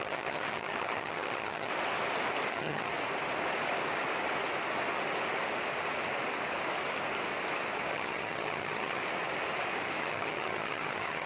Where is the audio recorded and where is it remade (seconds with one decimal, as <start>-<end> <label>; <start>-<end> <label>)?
0.0-1.7 remade; 1.7-2.5 recorded; 2.5-2.9 remade; 2.9-7.9 recorded; 7.9-9.0 remade; 9.0-10.0 recorded; 10.0-11.3 remade